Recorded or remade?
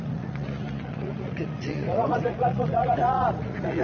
remade